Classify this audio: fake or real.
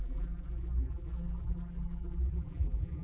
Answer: fake